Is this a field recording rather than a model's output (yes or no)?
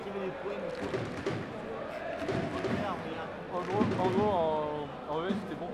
yes